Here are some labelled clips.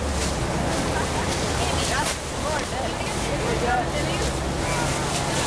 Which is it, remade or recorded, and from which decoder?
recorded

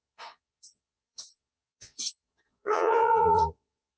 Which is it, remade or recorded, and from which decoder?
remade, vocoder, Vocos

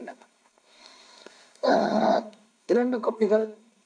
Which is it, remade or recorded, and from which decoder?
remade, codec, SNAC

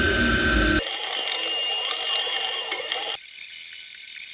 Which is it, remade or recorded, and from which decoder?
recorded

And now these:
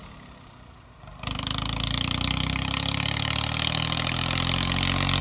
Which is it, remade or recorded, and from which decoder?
recorded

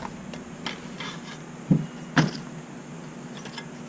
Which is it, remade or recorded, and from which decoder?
recorded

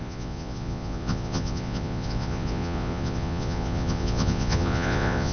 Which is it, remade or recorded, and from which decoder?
remade, vocoder, Vocos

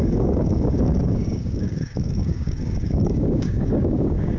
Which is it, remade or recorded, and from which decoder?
remade, codec, DAC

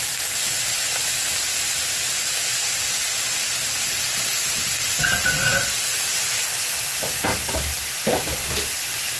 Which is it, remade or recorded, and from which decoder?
recorded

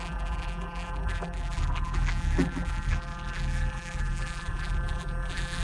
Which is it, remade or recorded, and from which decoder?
remade, vocoder, BigVGAN v2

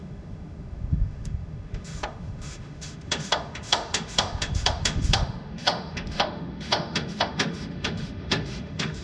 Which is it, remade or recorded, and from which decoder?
remade, autoencoder, DAC-VAE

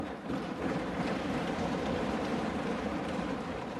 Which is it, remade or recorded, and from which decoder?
remade, vocoder, BigVGAN v2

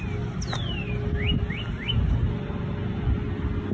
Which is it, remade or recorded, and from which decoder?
recorded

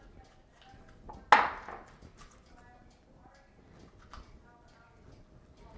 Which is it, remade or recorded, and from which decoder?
recorded